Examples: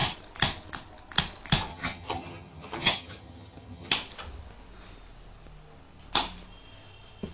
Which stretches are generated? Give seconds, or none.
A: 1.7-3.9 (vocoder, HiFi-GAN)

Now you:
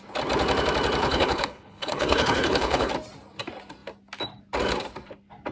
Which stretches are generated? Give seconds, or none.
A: 1.0-2.9 (codec, HILCodec)

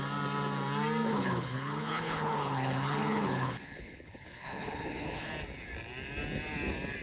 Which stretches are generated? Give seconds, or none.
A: 1.1-5.3 (codec, HILCodec)

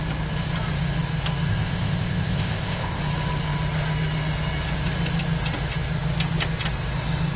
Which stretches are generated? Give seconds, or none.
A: 1.5-3.0 (codec, ZipCodec)